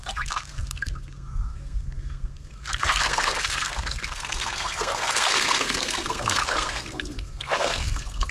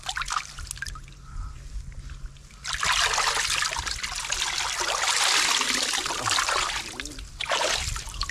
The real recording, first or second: second